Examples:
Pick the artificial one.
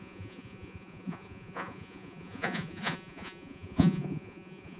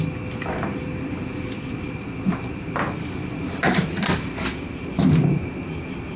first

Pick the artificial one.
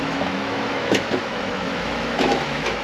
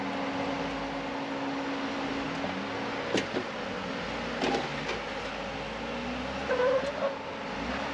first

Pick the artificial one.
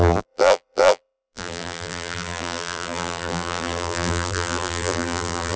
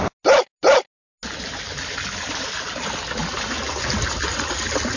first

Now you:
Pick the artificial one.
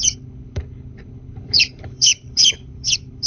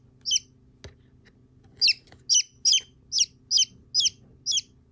first